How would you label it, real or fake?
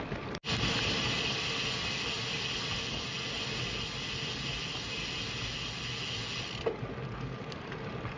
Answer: real